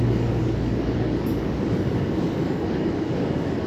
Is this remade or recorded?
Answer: remade